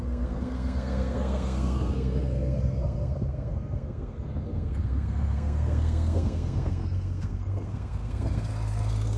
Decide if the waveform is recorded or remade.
remade